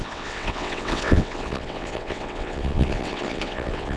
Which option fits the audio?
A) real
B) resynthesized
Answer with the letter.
B